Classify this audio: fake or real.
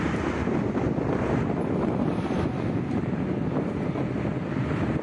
real